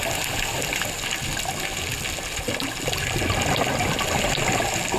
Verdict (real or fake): real